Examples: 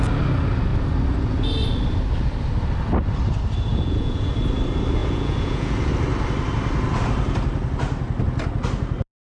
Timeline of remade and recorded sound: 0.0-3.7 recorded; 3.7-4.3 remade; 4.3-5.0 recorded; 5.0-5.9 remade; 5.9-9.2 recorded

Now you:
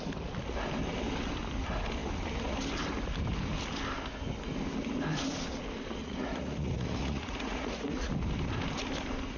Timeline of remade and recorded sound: 0.0-6.0 recorded; 6.0-8.1 remade; 8.1-9.4 recorded

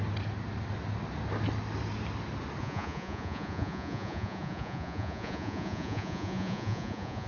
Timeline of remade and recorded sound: 0.0-2.6 recorded; 2.6-7.3 remade

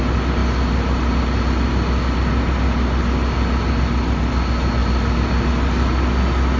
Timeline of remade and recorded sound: 0.0-6.6 recorded

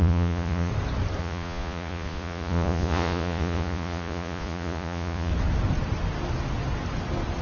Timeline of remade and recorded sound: 0.0-0.7 remade; 0.7-1.2 recorded; 1.2-5.3 remade; 5.3-7.4 recorded

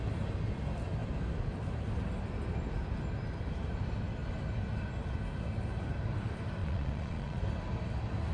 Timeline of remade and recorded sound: 0.0-6.6 recorded; 6.6-7.4 remade; 7.4-8.3 recorded

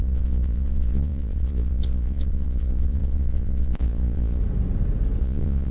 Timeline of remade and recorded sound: 0.0-4.4 remade; 4.4-5.2 recorded; 5.2-5.7 remade